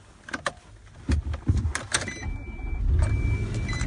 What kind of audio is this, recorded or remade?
recorded